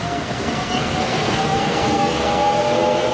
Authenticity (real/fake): fake